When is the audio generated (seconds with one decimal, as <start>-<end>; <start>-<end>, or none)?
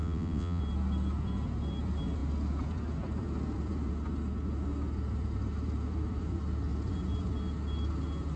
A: 0.0-0.6